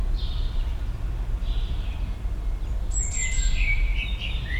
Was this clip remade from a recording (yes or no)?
yes